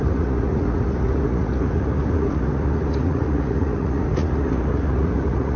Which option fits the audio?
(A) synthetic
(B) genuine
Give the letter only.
A